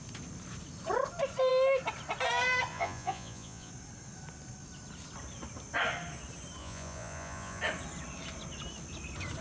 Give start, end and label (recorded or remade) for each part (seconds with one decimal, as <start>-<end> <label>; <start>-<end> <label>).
0.0-2.7 recorded; 2.7-3.7 remade; 3.7-6.6 recorded; 6.6-7.6 remade; 7.6-9.4 recorded